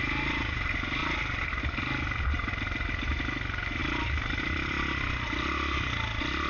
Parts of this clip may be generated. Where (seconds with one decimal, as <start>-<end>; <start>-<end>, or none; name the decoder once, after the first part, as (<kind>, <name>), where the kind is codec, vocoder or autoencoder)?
1.0-1.6 (vocoder, BigVGAN v2)